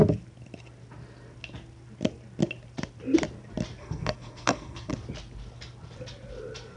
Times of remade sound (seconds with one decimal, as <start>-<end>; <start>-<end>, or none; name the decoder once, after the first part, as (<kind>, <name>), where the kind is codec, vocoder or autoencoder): 3.8-4.9 (codec, SNAC)